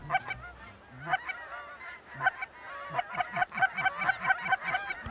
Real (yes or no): yes